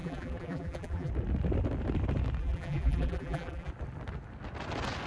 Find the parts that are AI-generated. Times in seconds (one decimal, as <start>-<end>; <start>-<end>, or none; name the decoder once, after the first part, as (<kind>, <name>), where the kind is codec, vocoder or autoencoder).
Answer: 0.0-1.1 (vocoder, BigVGAN v2); 2.4-3.7